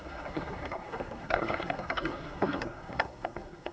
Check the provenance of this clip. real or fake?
fake